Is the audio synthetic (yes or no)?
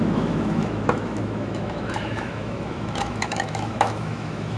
yes